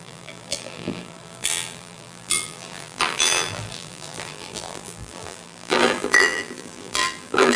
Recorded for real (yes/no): no